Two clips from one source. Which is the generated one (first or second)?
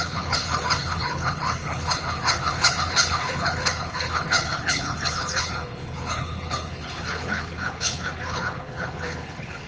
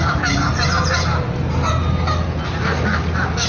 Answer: first